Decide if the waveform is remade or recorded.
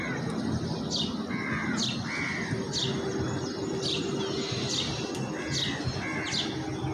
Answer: recorded